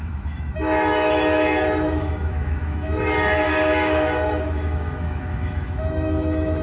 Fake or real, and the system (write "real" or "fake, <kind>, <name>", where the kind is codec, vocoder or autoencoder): fake, autoencoder, DAC-VAE